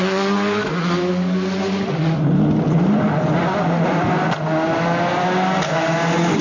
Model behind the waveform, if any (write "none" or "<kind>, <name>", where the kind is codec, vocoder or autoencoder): none